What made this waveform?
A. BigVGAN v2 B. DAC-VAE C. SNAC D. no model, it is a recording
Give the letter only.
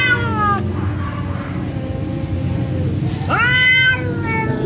D